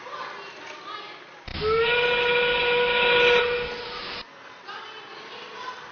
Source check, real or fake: real